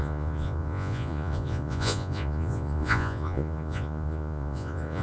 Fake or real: fake